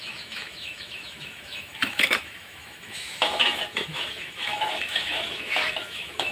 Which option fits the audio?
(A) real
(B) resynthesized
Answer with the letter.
B